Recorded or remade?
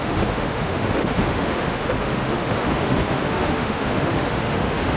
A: remade